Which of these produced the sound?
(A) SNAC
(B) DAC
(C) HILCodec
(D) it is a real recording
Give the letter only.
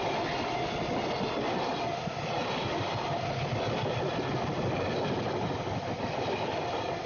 D